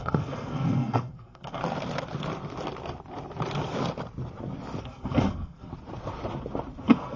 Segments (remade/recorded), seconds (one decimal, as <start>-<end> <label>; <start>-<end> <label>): 0.0-1.6 remade; 1.6-4.8 recorded; 4.8-5.7 remade; 5.7-6.8 recorded; 6.8-7.2 remade

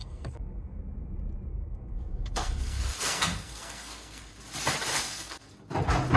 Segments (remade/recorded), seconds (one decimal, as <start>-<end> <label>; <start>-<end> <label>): 0.0-0.8 remade; 0.8-1.5 recorded; 1.5-4.3 remade; 4.3-4.9 recorded; 4.9-5.5 remade; 5.5-6.2 recorded

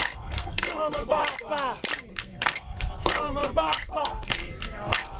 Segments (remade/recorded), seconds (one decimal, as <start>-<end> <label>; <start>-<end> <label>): 0.0-1.2 remade; 1.2-2.1 recorded; 2.1-5.2 remade